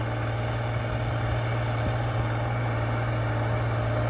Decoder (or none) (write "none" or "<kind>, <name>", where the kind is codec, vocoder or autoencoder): none